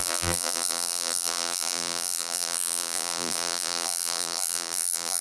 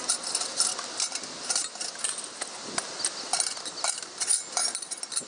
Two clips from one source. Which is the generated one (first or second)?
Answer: first